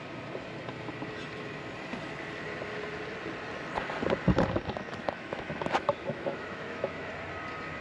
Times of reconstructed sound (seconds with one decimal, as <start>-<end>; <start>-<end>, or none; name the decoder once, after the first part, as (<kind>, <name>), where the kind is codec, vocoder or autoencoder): 5.0-7.1 (autoencoder, DAC-VAE)

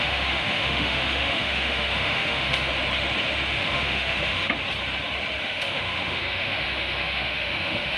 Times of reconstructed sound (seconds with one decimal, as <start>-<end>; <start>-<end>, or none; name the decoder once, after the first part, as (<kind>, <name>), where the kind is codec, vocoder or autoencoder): 0.0-2.7 (autoencoder, DAC-VAE); 3.5-4.4; 5.4-8.0

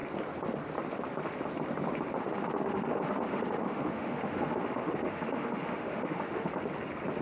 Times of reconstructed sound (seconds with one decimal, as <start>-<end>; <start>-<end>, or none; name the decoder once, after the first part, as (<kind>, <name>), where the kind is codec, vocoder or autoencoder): 2.2-6.5 (autoencoder, DAC-VAE)

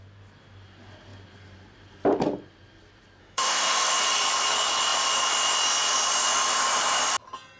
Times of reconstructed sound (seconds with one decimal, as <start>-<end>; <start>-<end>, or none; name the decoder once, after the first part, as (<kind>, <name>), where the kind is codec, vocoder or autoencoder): 3.2-4.0 (autoencoder, DAC-VAE)

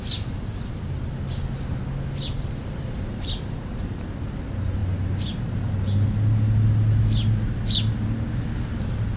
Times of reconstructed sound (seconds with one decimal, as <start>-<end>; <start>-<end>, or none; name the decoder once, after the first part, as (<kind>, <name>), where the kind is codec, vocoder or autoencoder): none